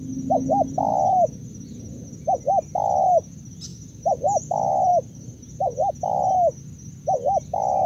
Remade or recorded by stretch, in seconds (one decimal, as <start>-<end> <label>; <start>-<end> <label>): 0.0-3.7 recorded; 3.7-4.4 remade; 4.4-4.9 recorded; 4.9-5.9 remade; 5.9-7.9 recorded